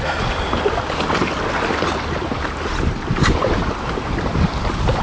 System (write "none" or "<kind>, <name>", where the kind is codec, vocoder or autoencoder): none